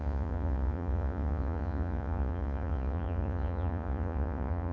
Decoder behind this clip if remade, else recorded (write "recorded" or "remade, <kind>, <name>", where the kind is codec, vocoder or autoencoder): remade, vocoder, Vocos